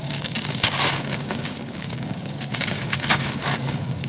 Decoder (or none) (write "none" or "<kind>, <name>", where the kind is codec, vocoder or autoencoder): codec, DAC